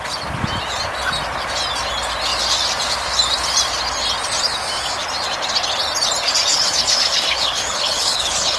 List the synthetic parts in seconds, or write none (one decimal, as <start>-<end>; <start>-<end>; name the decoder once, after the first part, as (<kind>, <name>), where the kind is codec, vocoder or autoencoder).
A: 6.5-8.6 (codec, HILCodec)

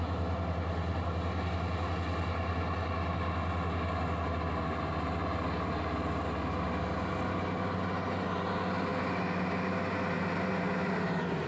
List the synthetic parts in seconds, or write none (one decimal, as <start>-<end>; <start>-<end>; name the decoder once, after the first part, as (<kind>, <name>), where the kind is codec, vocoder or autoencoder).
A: none